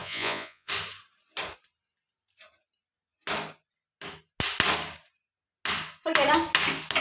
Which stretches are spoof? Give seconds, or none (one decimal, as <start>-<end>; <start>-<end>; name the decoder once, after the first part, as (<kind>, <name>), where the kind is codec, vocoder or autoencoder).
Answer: 0.0-0.7 (vocoder, Vocos)